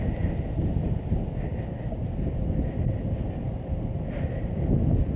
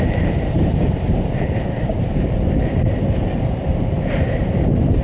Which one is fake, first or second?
second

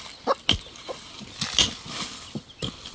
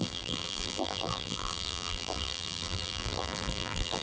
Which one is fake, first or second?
second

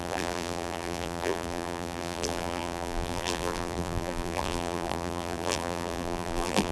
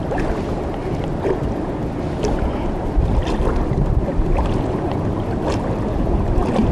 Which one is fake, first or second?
first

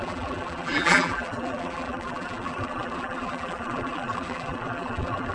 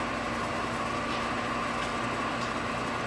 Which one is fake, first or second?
first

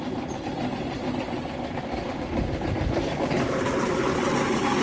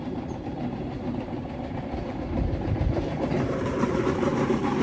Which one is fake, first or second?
second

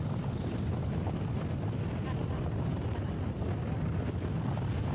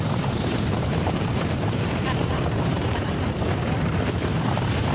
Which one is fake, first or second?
second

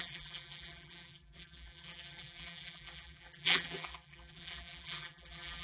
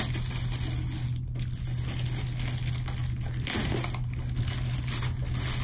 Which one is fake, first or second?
first